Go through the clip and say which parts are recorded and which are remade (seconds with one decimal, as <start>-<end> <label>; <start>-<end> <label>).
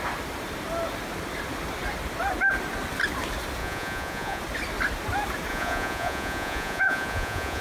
0.0-3.6 recorded; 3.6-4.4 remade; 4.4-5.5 recorded; 5.5-7.6 remade